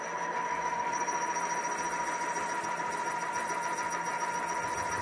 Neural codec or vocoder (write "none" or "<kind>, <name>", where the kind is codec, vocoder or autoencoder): none